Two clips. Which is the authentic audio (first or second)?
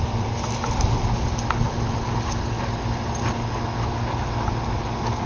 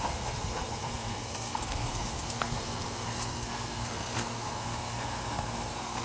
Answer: first